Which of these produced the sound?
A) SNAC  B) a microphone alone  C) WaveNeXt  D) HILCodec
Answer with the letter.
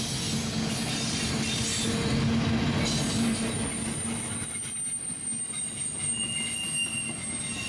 B